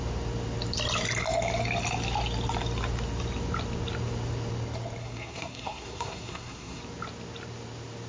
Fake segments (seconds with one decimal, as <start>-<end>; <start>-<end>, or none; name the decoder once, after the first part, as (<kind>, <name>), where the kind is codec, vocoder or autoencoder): 5.0-6.8 (codec, SNAC)